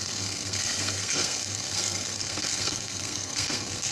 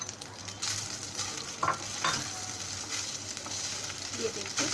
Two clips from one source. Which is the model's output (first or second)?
first